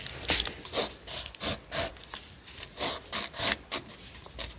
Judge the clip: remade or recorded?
recorded